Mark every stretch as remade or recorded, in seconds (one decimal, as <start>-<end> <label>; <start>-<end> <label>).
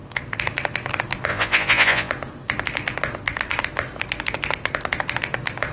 0.0-1.3 recorded; 1.3-2.1 remade; 2.1-5.7 recorded